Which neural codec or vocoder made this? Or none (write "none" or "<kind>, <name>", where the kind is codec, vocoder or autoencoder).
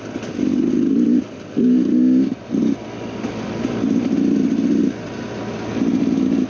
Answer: none